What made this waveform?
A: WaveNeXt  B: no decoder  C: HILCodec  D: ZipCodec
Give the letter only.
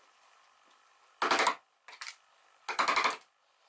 B